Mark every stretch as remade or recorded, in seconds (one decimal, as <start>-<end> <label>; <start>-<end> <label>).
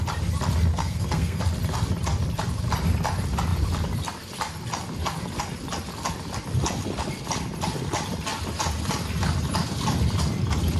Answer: 0.0-0.7 recorded; 0.7-1.4 remade; 1.4-10.8 recorded